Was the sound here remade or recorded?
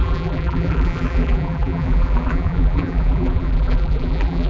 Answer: remade